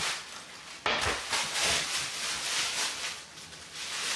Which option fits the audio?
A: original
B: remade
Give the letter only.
A